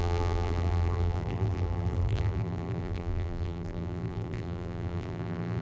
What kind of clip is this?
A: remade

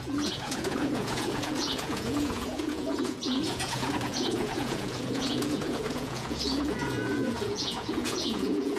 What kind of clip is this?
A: remade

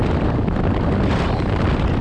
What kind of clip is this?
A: recorded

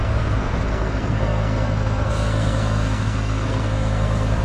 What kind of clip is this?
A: remade